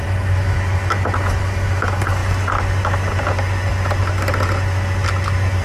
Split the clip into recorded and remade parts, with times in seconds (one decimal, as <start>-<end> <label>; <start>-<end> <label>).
0.0-5.6 recorded